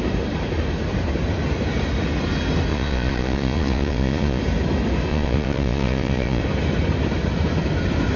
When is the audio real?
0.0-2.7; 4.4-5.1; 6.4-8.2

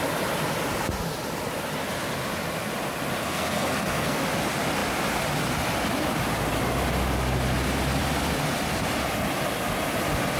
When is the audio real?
0.0-3.2; 4.2-10.4

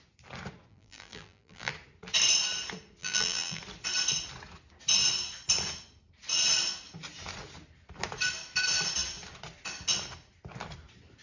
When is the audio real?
0.0-0.7; 1.7-3.0; 3.6-11.2

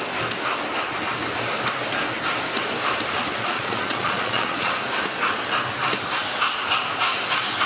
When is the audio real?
0.0-3.3; 4.7-7.7

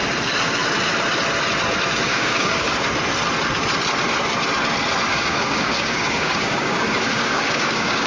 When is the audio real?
0.0-2.1; 2.7-5.1

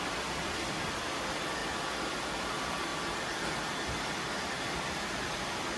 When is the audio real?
1.6-2.4; 2.9-4.0